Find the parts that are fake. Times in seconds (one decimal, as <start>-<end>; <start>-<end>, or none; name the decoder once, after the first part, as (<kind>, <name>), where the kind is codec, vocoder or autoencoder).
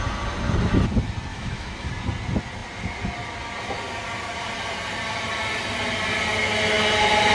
1.3-1.9 (autoencoder, DAC-VAE)